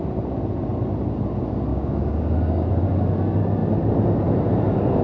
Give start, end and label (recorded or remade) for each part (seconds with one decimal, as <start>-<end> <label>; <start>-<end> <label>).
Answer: 0.0-1.7 recorded; 1.7-2.7 remade; 2.7-5.0 recorded